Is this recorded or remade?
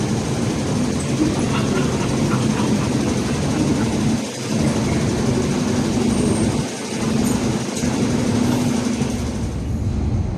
recorded